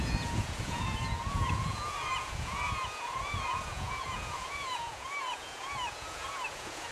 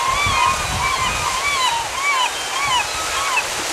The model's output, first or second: first